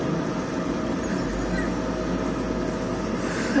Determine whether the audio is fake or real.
real